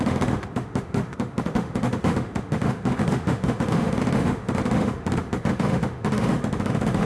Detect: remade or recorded remade